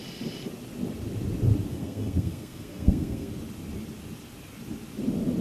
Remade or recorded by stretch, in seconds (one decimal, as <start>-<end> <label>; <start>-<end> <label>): 0.0-1.7 recorded; 1.7-3.3 remade; 3.3-5.4 recorded